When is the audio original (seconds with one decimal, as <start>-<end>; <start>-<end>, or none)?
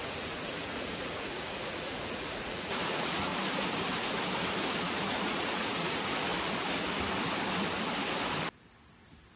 3.3-4.8; 6.3-9.4